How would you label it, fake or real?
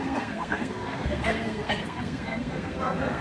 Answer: fake